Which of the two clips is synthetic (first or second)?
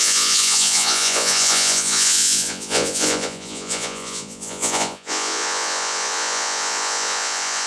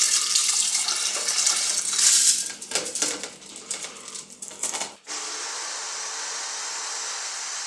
first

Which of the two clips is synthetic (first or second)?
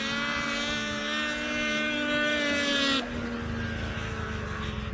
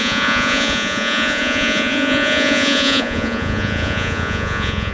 second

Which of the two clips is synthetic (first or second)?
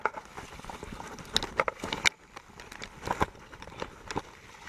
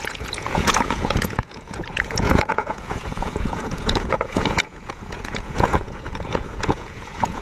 second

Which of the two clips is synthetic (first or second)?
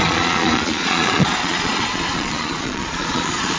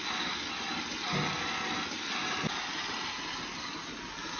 first